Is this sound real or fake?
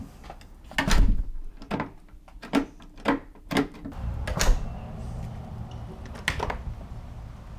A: real